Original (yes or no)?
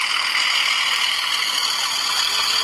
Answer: yes